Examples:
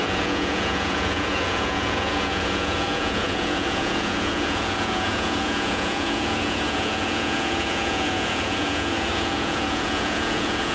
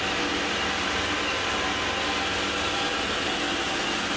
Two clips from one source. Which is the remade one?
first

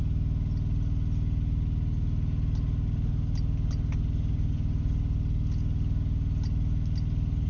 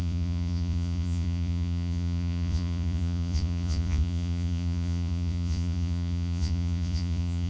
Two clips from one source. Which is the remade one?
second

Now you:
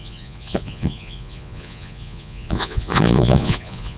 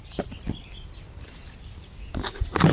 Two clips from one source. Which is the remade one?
first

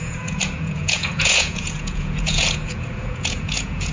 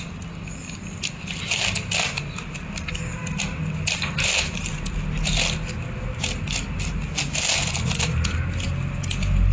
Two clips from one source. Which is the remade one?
first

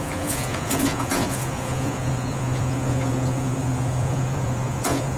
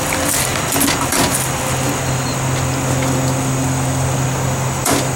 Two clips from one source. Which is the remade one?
first